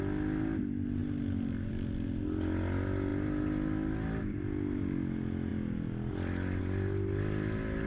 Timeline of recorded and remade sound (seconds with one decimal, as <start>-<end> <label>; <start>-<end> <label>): 0.0-7.9 recorded